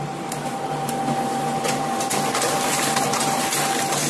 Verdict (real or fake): real